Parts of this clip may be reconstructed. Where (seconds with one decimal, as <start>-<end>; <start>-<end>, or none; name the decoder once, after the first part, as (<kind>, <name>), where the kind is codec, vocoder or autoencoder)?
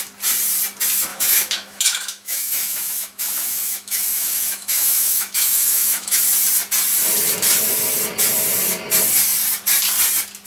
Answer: 1.1-6.2 (autoencoder, DAC-VAE)